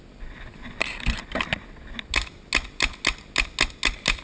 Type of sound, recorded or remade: recorded